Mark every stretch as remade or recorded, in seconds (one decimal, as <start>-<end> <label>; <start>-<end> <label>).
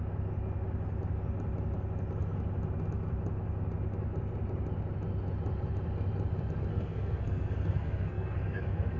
0.0-6.7 recorded; 6.7-9.0 remade